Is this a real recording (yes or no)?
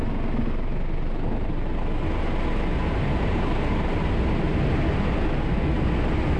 yes